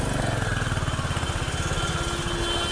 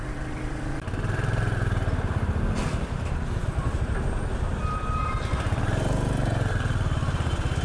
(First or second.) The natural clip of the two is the first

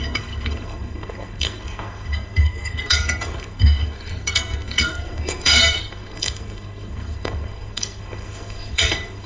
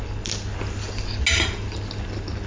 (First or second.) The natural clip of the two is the second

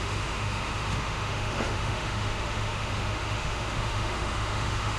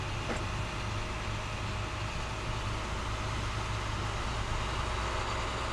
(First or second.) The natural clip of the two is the second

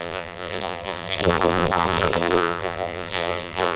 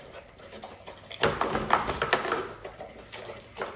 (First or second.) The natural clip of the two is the second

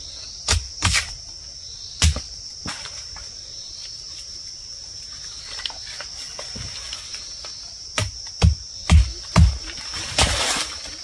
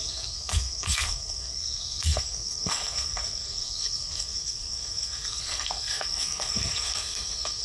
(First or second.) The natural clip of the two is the first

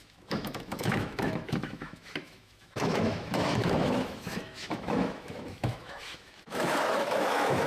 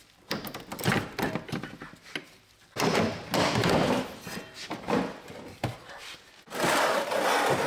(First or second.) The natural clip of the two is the second